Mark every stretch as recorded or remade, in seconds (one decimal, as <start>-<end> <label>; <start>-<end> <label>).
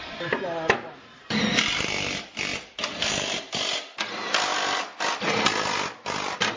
0.0-6.6 recorded